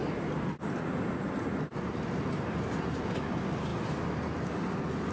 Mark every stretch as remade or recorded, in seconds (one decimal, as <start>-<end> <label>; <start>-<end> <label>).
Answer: 0.0-5.1 recorded